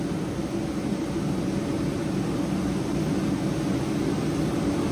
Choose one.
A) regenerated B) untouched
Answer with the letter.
B